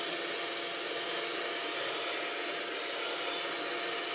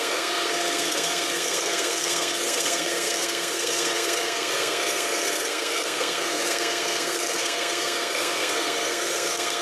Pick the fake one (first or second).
second